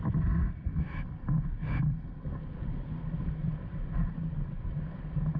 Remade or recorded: recorded